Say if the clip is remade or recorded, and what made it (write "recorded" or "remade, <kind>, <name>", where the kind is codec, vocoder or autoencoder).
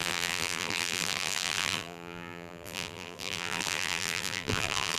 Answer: remade, vocoder, BigVGAN v2